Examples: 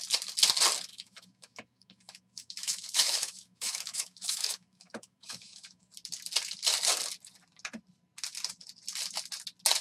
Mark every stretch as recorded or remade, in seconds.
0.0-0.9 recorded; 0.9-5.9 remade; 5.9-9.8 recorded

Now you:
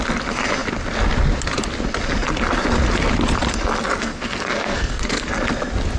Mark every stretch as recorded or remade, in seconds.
0.0-4.0 recorded; 4.0-5.3 remade; 5.3-6.0 recorded

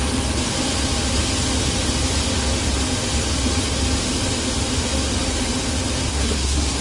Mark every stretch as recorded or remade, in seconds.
0.0-6.1 recorded; 6.1-6.8 remade

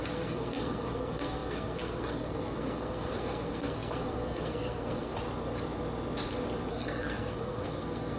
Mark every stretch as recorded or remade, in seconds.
0.0-5.1 remade; 5.1-6.7 recorded; 6.7-8.2 remade

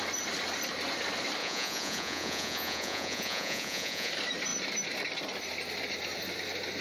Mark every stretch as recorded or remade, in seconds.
0.0-1.4 recorded; 1.4-4.1 remade; 4.1-6.8 recorded

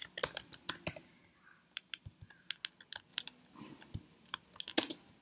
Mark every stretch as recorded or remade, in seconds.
0.0-0.7 remade; 0.7-1.2 recorded; 1.2-1.8 remade; 1.8-3.1 recorded; 3.1-4.6 remade; 4.6-5.2 recorded